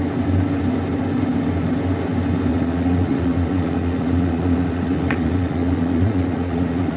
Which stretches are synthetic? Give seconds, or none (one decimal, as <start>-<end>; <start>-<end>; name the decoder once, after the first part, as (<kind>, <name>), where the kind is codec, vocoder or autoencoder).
2.5-7.0 (vocoder, Vocos)